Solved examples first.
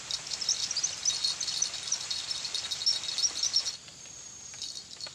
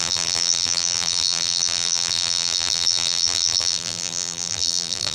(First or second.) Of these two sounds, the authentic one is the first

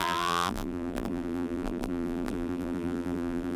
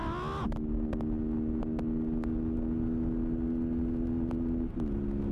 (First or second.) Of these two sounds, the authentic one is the second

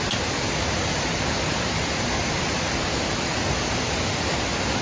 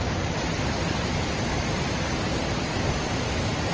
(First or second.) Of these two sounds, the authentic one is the first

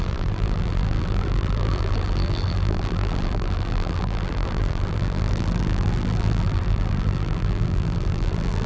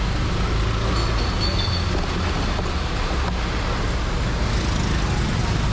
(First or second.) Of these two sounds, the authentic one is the second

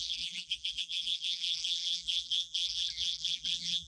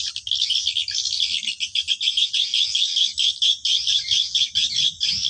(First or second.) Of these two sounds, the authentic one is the second